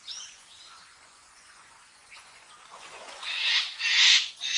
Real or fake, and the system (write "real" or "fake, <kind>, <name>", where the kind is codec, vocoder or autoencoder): fake, vocoder, Vocos